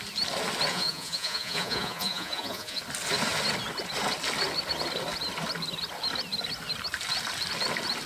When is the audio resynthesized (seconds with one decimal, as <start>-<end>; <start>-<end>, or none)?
0.7-2.8